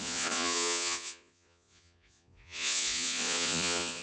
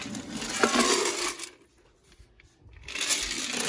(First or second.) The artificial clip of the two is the first